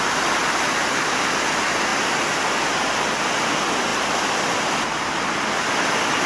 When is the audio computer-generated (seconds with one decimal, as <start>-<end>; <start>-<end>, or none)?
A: none